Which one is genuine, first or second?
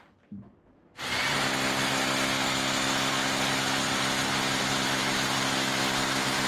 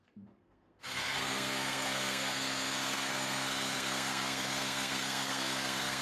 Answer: first